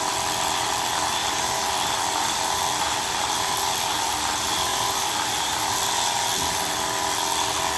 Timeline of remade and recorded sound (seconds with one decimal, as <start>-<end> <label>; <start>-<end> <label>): 0.0-1.2 recorded; 1.2-2.8 remade; 2.8-4.7 recorded; 4.7-6.5 remade; 6.5-7.8 recorded